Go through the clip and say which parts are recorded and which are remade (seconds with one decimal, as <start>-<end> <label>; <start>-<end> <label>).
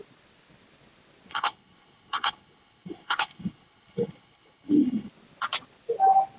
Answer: 0.0-1.3 recorded; 1.3-5.1 remade; 5.1-6.4 recorded